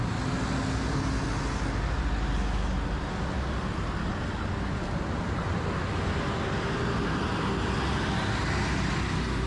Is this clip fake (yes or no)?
no